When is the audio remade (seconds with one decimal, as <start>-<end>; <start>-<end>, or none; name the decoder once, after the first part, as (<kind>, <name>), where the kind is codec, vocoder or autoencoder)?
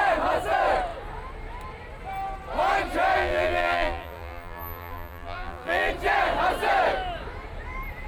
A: 3.2-5.9 (vocoder, BigVGAN v2)